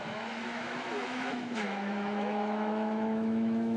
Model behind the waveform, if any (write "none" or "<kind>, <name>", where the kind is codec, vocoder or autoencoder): autoencoder, DAC-VAE